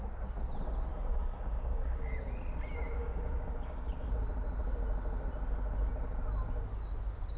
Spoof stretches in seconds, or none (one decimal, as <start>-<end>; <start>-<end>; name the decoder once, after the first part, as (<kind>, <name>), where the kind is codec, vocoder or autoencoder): 0.9-2.1 (codec, DAC); 3.0-4.1